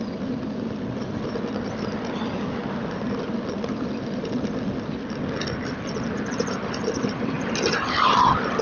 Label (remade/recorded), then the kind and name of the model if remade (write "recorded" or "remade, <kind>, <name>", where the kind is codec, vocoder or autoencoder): recorded